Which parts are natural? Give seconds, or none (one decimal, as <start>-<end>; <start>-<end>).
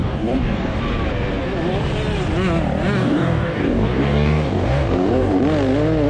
0.8-3.0; 5.4-6.1